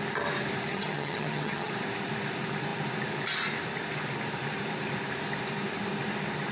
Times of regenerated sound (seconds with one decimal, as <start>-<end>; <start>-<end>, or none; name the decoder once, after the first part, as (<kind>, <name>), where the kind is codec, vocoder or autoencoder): 0.7-1.7 (vocoder, HiFi-GAN)